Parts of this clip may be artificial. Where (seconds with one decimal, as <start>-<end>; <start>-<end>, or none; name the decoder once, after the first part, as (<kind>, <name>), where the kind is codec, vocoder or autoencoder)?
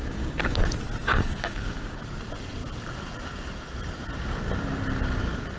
0.0-0.6 (codec, DAC); 1.1-2.0